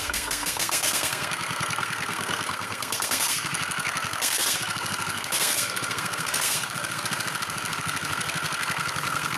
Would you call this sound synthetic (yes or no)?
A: yes